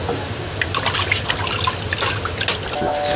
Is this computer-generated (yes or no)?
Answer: no